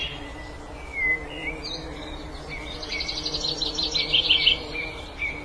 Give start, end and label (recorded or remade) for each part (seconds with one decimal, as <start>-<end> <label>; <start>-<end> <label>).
0.0-5.4 recorded